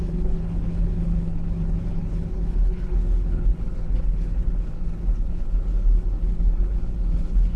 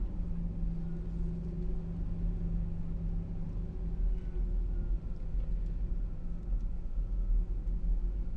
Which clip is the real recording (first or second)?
second